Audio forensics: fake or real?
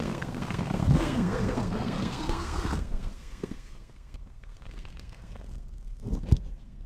fake